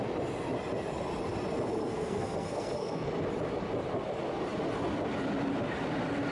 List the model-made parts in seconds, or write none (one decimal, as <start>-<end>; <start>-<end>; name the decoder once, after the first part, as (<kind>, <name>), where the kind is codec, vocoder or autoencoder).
1.8-3.1 (codec, SNAC)